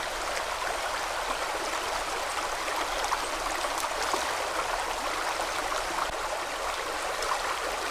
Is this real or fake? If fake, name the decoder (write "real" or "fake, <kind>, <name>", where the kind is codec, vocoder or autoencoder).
real